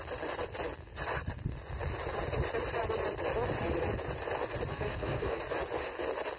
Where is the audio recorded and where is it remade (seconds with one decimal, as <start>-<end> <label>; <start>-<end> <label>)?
0.0-4.7 recorded; 4.7-5.4 remade; 5.4-6.4 recorded